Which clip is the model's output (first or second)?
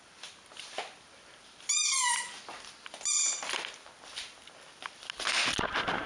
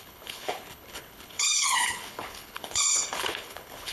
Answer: second